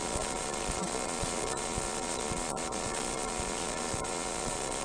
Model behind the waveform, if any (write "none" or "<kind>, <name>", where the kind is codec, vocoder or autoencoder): vocoder, Vocos